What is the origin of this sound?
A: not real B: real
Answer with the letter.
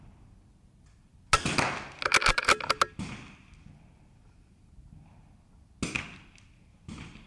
B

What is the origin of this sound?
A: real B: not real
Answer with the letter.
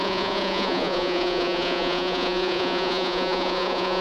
B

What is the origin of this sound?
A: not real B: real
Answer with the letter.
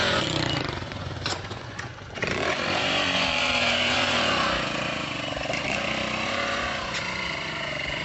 A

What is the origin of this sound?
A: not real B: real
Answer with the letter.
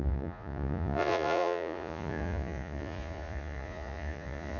A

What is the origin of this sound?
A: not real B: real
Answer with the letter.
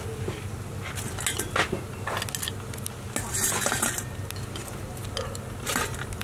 B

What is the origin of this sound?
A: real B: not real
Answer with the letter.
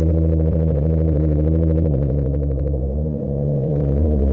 B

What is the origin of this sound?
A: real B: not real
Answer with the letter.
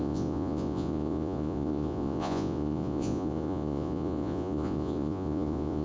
B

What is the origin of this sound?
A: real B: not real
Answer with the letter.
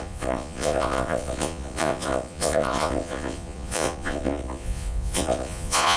B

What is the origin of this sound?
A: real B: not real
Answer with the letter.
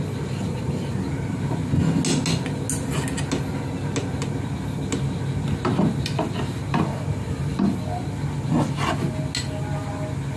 A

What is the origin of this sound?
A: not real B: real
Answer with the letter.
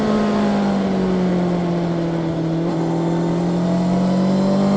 B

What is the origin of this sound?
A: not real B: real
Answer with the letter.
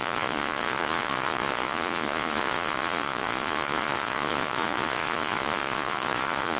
A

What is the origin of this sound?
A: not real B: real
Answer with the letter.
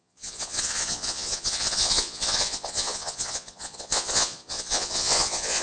A